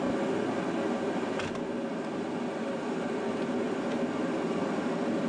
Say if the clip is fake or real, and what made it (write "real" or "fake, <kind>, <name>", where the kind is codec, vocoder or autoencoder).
real